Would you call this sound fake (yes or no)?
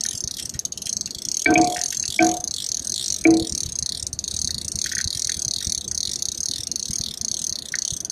no